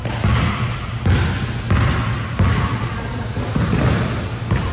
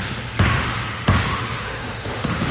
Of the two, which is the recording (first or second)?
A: first